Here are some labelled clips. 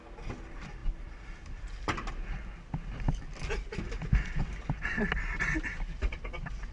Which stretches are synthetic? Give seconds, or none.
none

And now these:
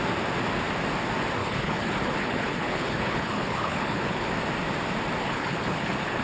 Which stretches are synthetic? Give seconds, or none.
1.4-4.3 (codec, HILCodec); 5.2-6.2

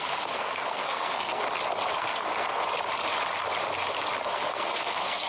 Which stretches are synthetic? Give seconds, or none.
0.0-1.4 (codec, SNAC); 1.9-2.6; 4.2-5.3

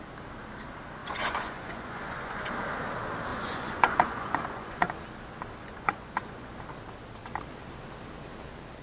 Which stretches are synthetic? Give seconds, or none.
1.0-2.5 (vocoder, Vocos); 3.3-4.9; 5.6-6.6

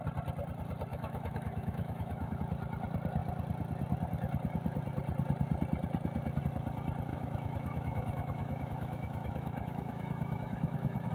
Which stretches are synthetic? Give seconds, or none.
0.9-2.4 (autoencoder, DAC-VAE); 7.1-11.1